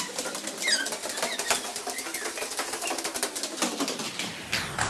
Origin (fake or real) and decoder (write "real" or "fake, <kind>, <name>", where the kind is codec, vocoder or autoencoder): real